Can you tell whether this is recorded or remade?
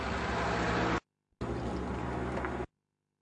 recorded